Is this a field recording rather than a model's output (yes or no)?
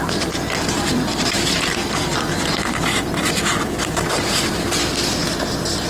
no